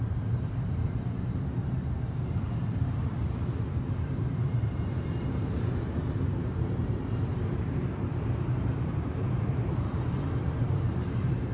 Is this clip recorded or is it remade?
remade